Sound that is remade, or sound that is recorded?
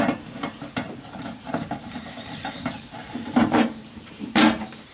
remade